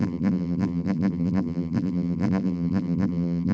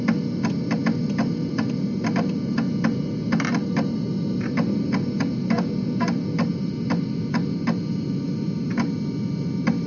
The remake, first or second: first